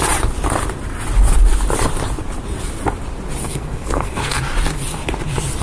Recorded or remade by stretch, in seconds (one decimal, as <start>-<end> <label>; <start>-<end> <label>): 0.0-3.4 recorded; 3.4-4.4 remade; 4.4-5.6 recorded